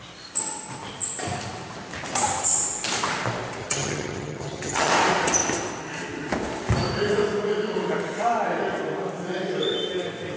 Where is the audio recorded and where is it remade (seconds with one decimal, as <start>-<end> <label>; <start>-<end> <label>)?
0.0-3.6 recorded; 3.6-4.9 remade; 4.9-10.4 recorded